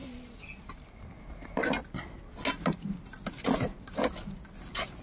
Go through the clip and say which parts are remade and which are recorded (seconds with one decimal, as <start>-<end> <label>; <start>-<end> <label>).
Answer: 0.0-5.0 recorded